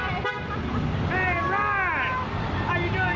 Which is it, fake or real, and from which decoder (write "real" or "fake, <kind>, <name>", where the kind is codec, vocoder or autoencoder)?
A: real